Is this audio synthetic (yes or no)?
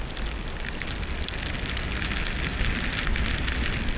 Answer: no